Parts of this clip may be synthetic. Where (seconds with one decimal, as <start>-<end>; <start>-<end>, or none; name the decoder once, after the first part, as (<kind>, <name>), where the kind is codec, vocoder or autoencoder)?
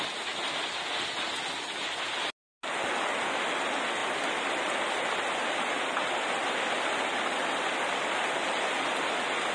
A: none